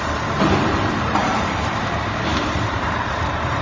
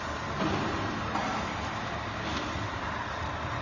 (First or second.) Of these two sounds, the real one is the second